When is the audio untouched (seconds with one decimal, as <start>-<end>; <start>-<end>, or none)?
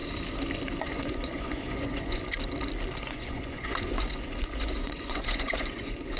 0.0-0.8; 2.2-3.0